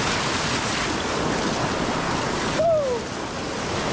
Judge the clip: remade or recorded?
recorded